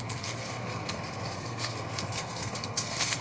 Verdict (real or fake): fake